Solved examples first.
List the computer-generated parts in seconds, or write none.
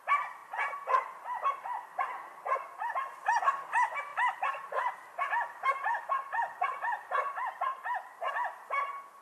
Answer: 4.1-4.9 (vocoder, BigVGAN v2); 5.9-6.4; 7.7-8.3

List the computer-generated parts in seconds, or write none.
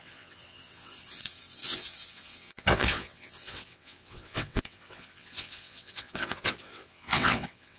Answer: 0.0-7.8 (vocoder, WaveNeXt)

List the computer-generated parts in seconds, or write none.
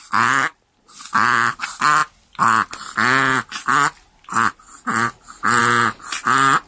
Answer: none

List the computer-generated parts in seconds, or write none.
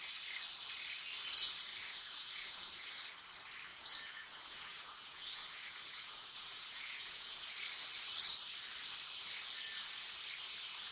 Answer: 1.7-2.9 (vocoder, Vocos); 3.7-7.5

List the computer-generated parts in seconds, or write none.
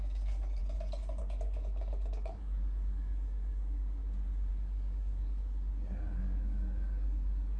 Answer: 0.0-0.6 (codec, DAC); 1.2-4.0; 4.5-5.4; 6.2-7.6